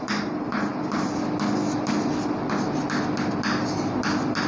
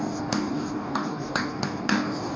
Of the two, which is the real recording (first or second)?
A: first